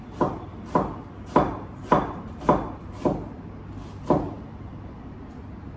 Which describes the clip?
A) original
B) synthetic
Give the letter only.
A